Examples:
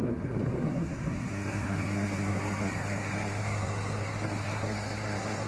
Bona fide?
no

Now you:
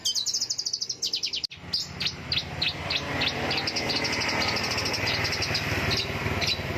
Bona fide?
yes